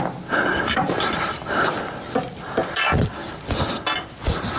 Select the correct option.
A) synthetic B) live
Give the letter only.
B